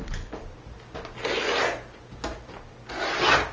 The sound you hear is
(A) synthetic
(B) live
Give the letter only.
B